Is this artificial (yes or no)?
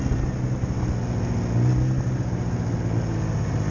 no